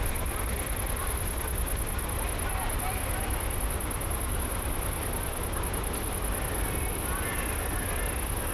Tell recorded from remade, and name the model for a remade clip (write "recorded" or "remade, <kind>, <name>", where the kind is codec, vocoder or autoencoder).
recorded